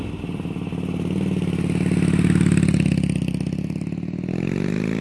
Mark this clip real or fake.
real